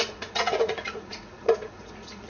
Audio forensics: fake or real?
fake